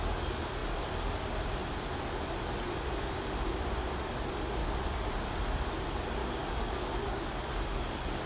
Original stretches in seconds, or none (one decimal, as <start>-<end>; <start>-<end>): 0.0-6.2; 7.3-8.3